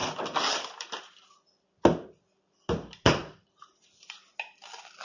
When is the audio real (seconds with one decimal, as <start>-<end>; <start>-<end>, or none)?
1.7-3.2; 3.8-5.0